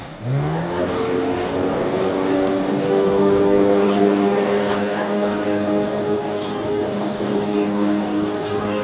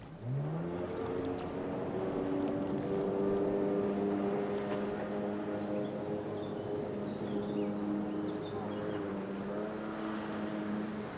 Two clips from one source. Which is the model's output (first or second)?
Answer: first